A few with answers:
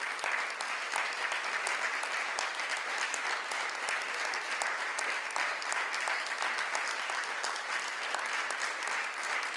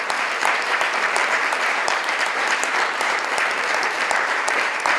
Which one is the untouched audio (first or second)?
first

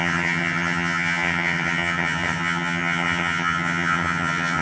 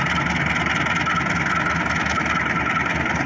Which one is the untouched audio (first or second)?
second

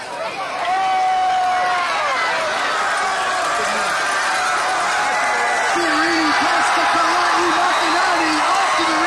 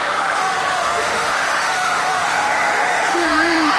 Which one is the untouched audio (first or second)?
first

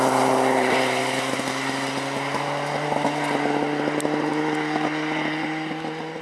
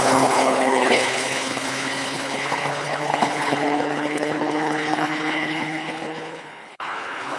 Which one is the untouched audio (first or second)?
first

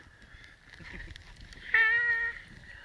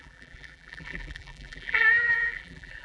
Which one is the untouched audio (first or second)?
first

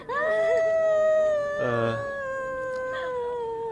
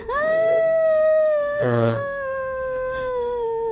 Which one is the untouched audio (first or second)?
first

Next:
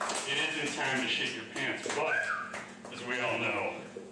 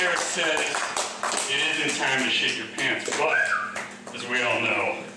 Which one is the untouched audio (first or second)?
second